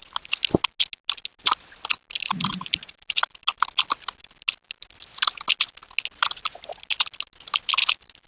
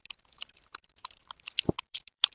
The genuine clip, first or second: first